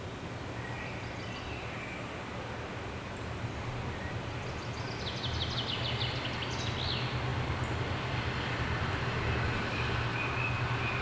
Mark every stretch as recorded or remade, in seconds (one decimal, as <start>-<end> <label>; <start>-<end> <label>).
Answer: 0.0-11.0 recorded